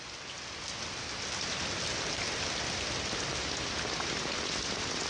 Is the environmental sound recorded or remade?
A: recorded